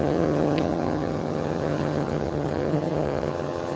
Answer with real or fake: fake